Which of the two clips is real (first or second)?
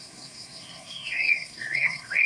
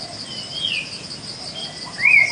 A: second